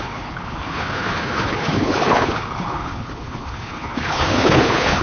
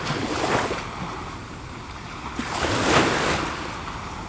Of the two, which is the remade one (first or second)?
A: first